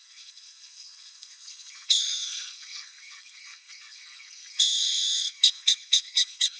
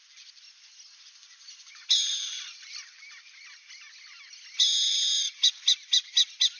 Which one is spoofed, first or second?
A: first